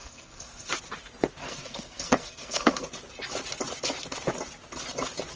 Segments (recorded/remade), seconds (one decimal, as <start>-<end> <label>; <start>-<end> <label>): 0.0-0.7 remade; 0.7-1.4 recorded; 1.4-2.9 remade; 2.9-5.4 recorded